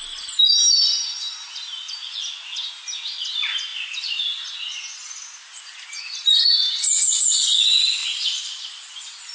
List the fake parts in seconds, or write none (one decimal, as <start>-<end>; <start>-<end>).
none